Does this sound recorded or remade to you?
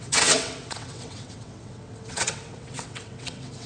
remade